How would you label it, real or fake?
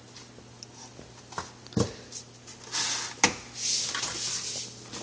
real